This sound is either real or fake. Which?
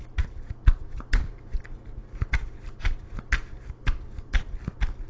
real